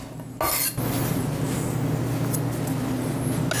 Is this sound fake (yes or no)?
no